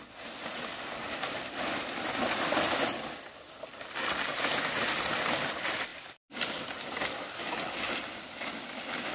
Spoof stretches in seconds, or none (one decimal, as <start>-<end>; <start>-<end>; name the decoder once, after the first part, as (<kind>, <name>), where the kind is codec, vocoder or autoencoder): none